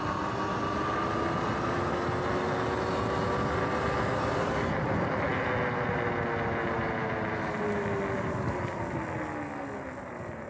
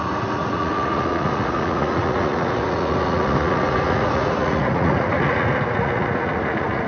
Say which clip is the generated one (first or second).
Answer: second